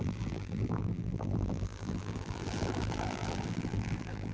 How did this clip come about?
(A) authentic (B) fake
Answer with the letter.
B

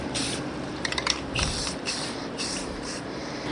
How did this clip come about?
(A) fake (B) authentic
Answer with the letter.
A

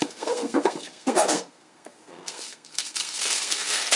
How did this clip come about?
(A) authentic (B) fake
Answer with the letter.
B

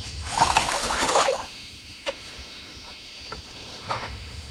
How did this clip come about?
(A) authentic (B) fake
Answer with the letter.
B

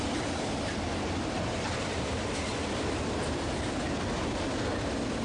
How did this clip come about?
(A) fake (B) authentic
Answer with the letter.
B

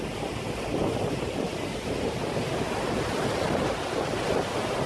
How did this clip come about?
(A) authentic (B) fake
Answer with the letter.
A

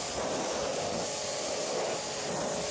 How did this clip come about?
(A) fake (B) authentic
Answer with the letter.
B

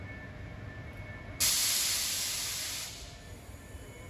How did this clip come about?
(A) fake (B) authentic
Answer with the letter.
B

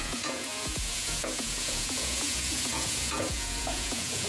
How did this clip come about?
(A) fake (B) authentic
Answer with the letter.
A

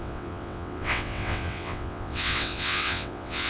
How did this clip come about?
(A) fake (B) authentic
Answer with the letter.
A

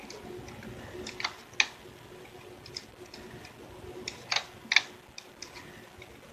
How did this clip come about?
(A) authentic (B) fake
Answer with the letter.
A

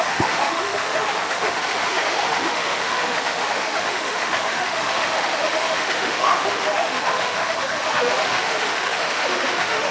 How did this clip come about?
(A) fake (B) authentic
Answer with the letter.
A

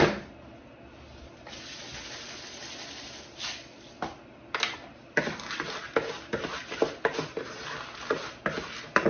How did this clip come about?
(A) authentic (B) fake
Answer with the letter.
A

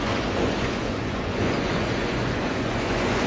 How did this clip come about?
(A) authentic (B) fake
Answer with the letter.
B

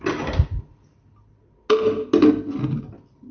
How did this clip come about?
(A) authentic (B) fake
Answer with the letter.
A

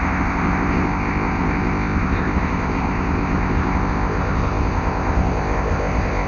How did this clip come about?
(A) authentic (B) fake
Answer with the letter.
B